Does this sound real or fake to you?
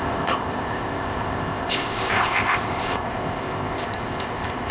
fake